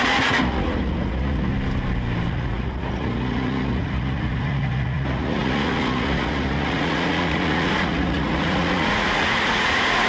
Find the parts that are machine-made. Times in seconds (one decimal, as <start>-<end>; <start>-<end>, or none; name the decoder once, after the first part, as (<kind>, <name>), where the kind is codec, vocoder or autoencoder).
0.0-1.5 (vocoder, Vocos); 2.3-10.1